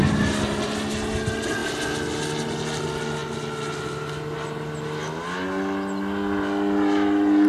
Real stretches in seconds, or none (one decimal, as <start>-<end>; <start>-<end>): 0.0-7.5